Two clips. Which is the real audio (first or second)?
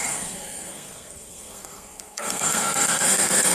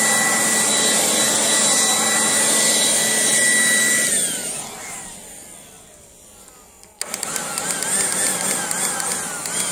second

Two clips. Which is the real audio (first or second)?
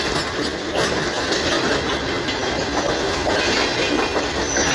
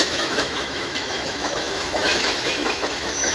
first